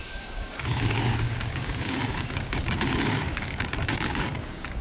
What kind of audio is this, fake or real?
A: fake